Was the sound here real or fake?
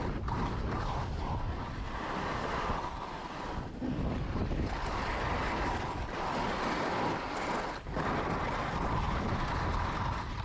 real